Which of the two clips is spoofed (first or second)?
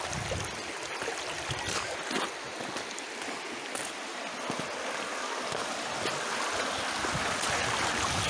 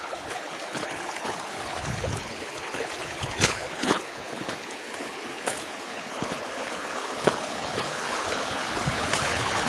second